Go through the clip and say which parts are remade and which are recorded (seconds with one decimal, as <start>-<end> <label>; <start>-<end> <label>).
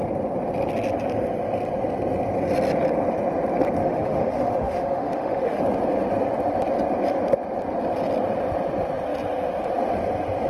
0.0-3.8 recorded; 3.8-5.6 remade; 5.6-10.5 recorded